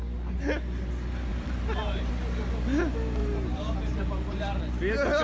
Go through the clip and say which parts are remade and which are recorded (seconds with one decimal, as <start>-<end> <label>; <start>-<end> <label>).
0.0-1.3 recorded; 1.3-2.1 remade; 2.1-3.2 recorded; 3.2-4.6 remade; 4.6-5.2 recorded